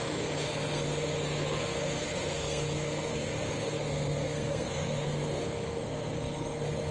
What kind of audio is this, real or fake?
fake